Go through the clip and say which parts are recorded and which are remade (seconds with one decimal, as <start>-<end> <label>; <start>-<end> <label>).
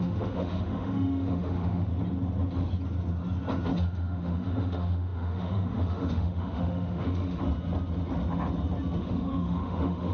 0.0-1.9 remade; 1.9-3.8 recorded; 3.8-7.4 remade; 7.4-9.0 recorded; 9.0-10.1 remade